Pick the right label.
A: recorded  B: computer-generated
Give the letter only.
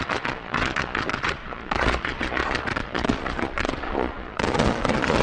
B